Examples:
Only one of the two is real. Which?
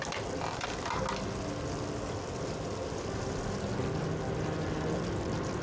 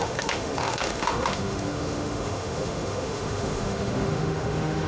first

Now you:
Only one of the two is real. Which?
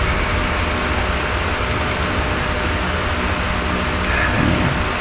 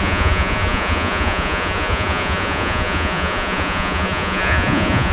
first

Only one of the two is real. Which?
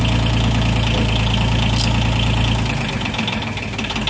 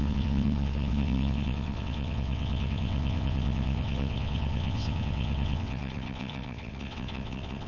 first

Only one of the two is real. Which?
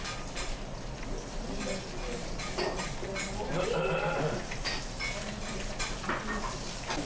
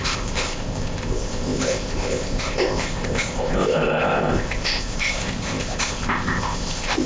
first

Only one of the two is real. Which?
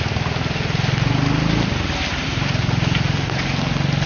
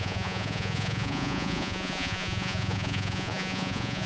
first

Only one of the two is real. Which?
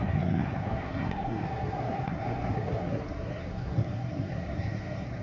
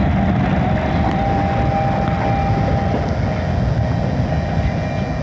second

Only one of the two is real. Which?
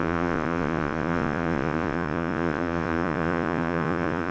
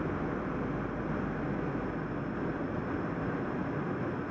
second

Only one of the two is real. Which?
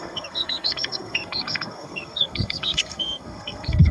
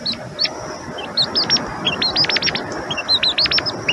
second